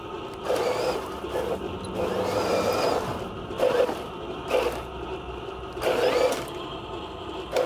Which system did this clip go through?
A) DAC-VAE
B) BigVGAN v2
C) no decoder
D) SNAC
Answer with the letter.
C